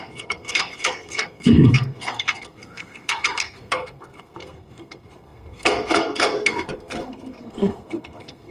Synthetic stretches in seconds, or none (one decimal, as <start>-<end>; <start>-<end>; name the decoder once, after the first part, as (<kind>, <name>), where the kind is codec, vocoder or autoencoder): 0.0-8.5 (codec, SNAC)